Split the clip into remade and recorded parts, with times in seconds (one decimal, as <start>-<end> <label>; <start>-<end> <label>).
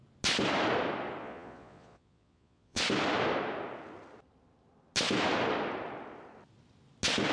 0.0-1.2 recorded; 1.2-2.8 remade; 2.8-7.3 recorded